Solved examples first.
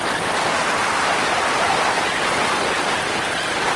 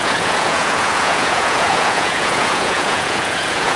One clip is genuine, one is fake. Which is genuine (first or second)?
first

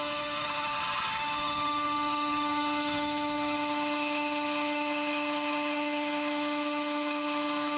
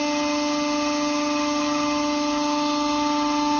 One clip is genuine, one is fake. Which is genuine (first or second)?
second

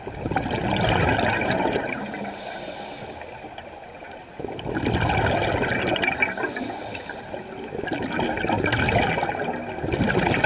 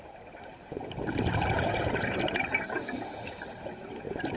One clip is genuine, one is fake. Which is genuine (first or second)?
first